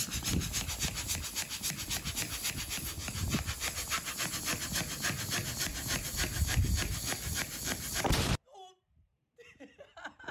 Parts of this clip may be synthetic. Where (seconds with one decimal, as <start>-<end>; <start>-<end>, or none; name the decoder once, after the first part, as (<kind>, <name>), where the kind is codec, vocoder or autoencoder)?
5.7-9.1 (vocoder, BigVGAN v2)